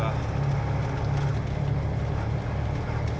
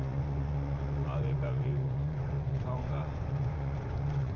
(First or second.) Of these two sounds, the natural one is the first